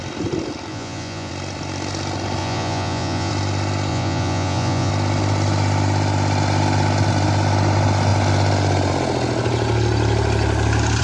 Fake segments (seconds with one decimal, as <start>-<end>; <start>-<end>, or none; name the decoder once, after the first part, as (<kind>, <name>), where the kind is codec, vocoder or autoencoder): 0.7-1.3 (vocoder, Vocos); 2.4-3.3; 3.9-4.9